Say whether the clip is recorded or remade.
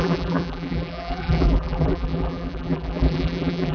remade